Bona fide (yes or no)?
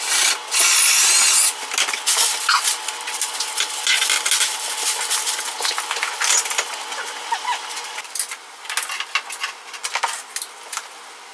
yes